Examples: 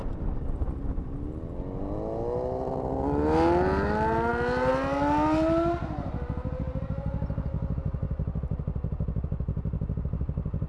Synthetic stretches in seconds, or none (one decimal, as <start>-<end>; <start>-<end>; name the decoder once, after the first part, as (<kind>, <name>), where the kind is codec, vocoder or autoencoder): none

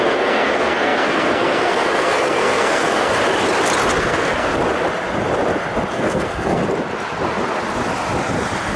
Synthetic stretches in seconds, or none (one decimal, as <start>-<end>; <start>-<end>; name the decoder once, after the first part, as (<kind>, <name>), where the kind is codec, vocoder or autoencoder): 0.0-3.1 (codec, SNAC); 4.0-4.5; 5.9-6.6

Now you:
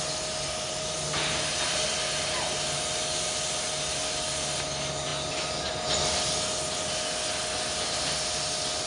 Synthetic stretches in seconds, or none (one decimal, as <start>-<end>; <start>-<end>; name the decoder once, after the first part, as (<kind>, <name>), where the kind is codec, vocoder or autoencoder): none

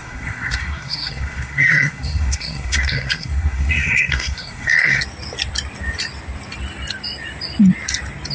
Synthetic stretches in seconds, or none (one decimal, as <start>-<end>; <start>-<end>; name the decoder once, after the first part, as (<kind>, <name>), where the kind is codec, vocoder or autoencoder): 0.0-5.0 (codec, SNAC)